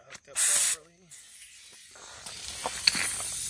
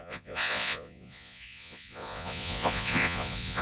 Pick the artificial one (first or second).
second